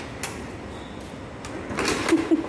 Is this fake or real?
real